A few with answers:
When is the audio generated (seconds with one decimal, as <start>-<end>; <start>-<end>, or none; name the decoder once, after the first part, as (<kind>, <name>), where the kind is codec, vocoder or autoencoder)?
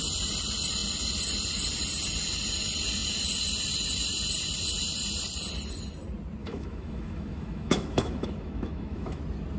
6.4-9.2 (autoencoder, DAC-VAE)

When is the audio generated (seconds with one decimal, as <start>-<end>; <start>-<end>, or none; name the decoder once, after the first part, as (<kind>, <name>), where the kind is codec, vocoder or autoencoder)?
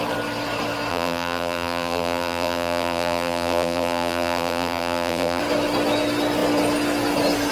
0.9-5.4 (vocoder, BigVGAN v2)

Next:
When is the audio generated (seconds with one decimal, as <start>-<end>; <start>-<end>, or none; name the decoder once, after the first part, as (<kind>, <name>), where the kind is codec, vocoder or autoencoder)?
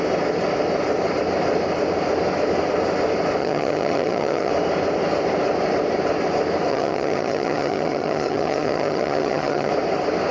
3.4-4.5 (vocoder, HiFi-GAN); 6.7-9.7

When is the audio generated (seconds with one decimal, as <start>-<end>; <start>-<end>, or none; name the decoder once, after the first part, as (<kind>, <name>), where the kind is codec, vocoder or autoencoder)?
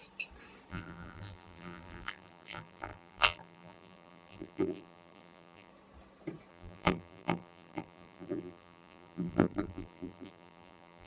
0.7-5.7 (vocoder, BigVGAN v2); 6.5-11.1